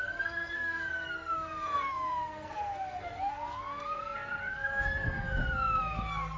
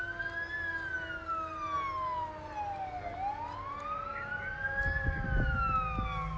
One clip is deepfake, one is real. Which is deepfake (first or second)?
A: first